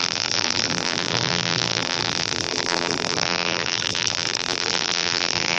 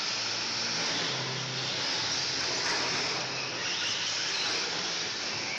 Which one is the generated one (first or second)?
first